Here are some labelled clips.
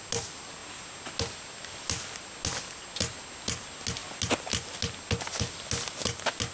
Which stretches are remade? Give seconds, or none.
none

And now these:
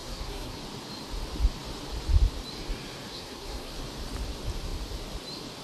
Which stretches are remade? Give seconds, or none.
0.0-0.6; 3.1-3.7

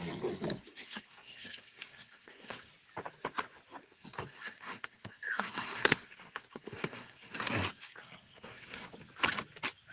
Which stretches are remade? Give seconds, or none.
0.7-2.7; 3.8-8.9

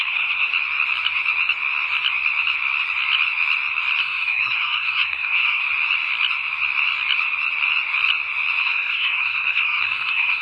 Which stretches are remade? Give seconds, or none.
0.0-0.5; 4.0-5.6; 8.6-10.4

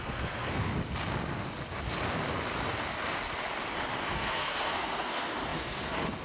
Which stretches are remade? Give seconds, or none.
0.0-0.7; 4.1-6.2